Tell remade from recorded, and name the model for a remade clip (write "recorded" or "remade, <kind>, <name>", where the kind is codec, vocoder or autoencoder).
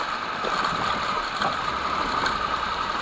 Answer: remade, vocoder, BigVGAN v2